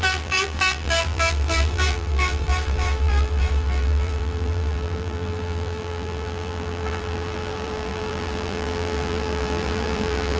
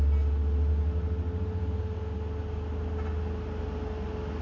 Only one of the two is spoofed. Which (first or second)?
first